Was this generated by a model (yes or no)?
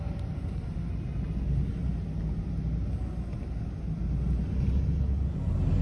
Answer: no